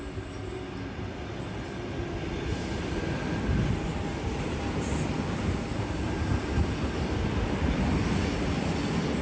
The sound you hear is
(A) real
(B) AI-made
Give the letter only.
A